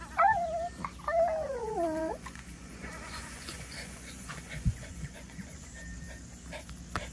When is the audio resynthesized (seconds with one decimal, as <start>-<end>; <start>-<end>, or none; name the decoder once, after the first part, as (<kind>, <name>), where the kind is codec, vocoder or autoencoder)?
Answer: 1.4-5.7 (vocoder, Vocos)

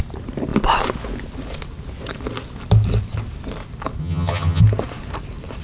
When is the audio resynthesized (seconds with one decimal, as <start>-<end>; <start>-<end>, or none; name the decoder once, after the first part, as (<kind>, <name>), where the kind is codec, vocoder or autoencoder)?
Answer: 4.0-4.6 (vocoder, HiFi-GAN)